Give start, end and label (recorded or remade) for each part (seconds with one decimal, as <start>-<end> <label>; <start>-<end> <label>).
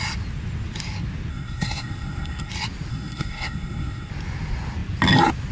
0.0-1.3 recorded; 1.3-2.5 remade; 2.5-2.9 recorded; 2.9-4.1 remade; 4.1-5.5 recorded